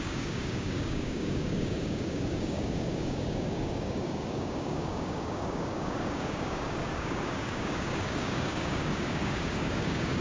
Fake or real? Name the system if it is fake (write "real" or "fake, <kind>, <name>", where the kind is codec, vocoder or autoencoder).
fake, codec, DAC